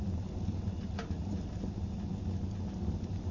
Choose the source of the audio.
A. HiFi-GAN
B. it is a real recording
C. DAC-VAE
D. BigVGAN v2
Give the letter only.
B